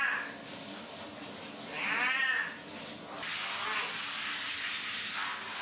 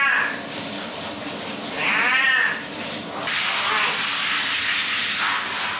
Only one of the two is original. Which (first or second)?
first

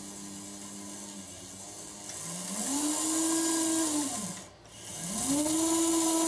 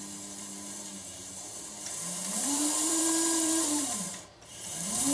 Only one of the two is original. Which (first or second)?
first